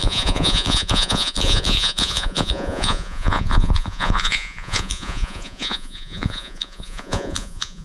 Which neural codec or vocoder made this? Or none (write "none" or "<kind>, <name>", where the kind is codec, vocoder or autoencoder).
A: vocoder, Vocos